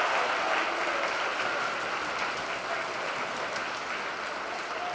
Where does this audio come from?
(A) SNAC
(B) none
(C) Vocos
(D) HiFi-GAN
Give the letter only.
B